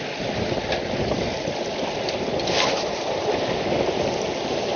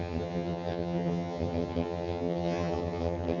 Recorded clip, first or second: first